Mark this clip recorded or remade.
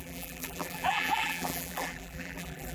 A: remade